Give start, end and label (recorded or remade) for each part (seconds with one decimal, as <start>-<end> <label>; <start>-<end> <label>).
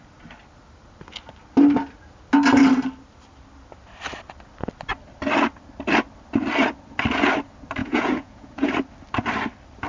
0.0-7.8 recorded; 7.8-8.7 remade; 8.7-9.9 recorded